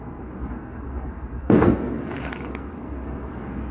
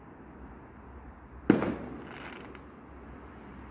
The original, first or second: second